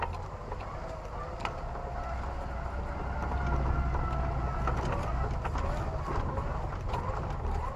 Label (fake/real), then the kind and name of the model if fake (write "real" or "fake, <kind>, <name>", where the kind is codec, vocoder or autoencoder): real